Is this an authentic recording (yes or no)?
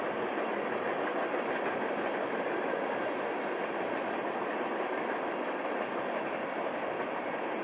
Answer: yes